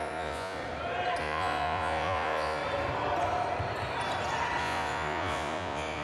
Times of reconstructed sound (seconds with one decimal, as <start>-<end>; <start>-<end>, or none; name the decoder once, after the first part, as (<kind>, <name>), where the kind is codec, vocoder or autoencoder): 0.0-0.6 (vocoder, Vocos); 1.2-2.6; 4.6-6.0